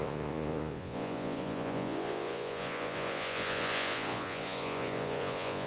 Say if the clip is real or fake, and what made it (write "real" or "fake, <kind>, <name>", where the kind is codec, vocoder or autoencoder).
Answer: fake, vocoder, Vocos